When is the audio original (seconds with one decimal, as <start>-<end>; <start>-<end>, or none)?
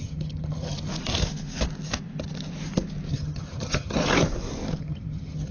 0.9-3.1; 4.0-4.8